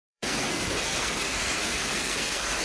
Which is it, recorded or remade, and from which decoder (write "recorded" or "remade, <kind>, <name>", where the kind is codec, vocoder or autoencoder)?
remade, codec, SNAC